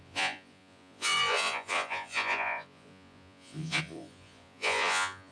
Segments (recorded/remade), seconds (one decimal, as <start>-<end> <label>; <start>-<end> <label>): 0.0-5.3 remade